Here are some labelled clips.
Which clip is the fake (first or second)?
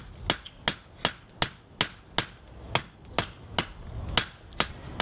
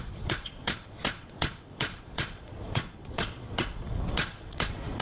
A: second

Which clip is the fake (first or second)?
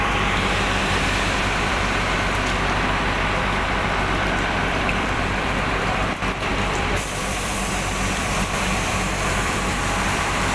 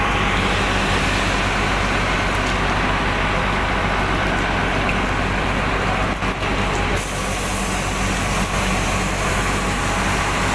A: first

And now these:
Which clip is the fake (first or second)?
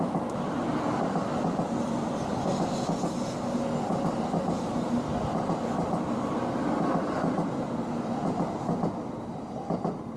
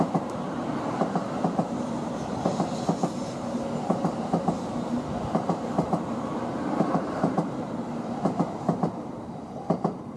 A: second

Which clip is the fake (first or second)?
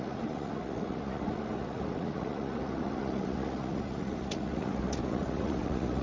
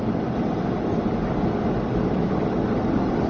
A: first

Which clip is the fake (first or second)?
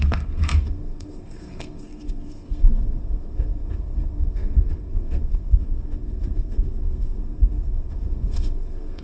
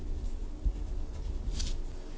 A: first